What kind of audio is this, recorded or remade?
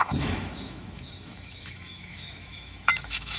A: remade